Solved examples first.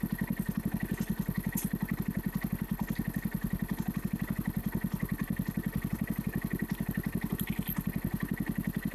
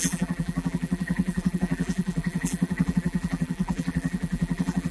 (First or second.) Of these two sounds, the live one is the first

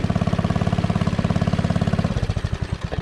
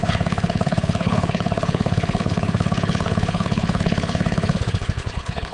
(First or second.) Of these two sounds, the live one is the first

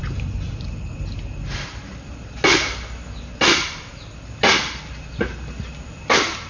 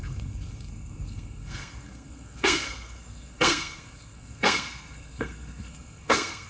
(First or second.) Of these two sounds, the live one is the first